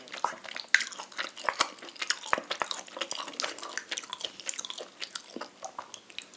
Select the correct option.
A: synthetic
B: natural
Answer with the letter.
B